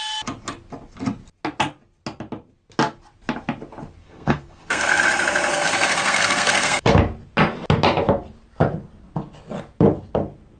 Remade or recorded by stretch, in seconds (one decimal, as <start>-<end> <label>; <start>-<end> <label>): 0.0-4.0 recorded; 4.0-5.0 remade; 5.0-5.5 recorded; 5.5-6.9 remade; 6.9-10.6 recorded